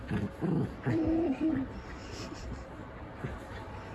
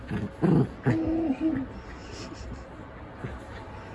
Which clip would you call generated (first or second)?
first